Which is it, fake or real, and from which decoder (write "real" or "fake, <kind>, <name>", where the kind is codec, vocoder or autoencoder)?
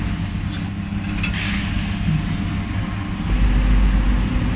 real